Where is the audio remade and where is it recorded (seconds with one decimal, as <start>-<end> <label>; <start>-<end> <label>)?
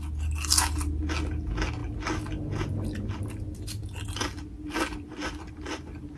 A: 0.0-6.2 recorded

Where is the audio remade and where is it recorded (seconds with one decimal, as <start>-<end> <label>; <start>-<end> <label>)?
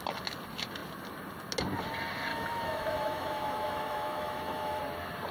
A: 0.0-2.3 recorded; 2.3-4.8 remade; 4.8-5.3 recorded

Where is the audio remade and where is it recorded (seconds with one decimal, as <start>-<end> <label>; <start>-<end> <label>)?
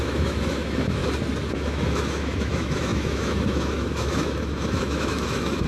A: 0.0-1.0 remade; 1.0-1.5 recorded; 1.5-5.7 remade